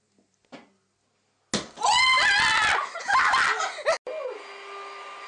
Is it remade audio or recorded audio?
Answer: recorded